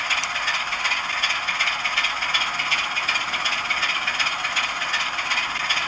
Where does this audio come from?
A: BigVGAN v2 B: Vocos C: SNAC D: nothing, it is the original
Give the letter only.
D